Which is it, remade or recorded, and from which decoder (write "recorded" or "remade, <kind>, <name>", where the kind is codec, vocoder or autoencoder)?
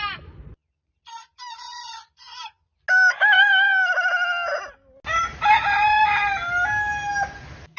recorded